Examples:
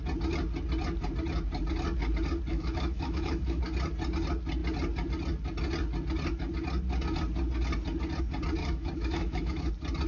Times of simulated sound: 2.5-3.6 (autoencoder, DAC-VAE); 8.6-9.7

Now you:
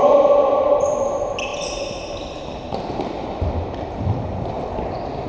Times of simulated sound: 1.5-4.7 (vocoder, BigVGAN v2)

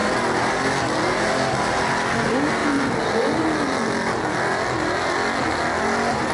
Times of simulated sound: none

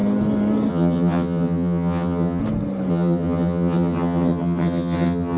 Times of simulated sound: 0.7-2.4 (vocoder, HiFi-GAN); 2.9-5.4

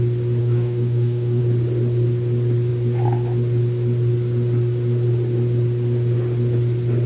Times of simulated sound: 0.4-1.4 (codec, DAC)